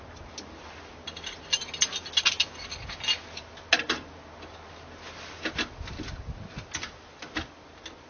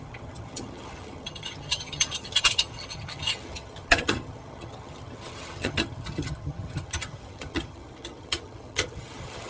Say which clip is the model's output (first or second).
second